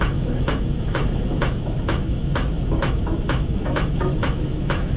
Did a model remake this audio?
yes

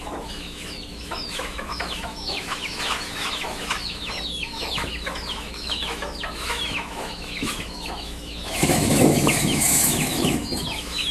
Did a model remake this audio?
yes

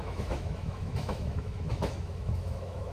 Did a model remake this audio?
yes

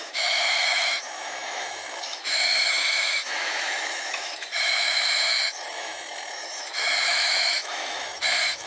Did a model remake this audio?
yes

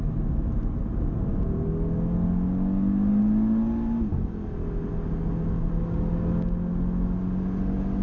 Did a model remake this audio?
no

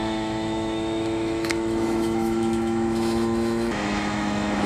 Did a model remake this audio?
yes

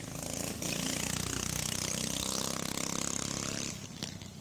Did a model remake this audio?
no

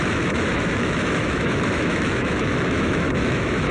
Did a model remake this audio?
yes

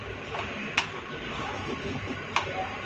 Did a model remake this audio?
no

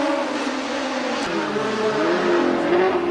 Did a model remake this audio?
no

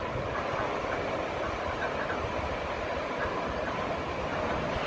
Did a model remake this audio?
no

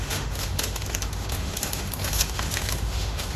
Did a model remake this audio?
yes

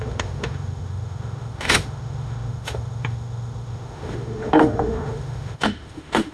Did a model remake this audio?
yes